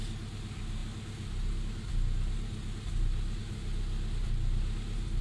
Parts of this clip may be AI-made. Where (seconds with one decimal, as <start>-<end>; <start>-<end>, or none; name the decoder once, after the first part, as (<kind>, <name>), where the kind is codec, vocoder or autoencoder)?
none